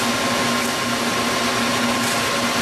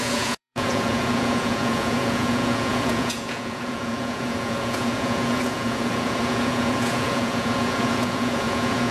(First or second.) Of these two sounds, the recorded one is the first